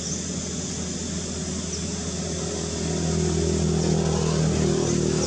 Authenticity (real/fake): real